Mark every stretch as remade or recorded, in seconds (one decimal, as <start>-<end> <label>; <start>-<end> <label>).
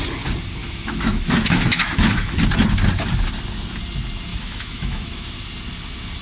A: 0.0-0.6 recorded; 0.6-2.4 remade; 2.4-4.3 recorded; 4.3-5.3 remade; 5.3-6.2 recorded